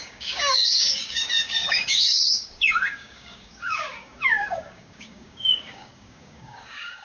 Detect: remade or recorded remade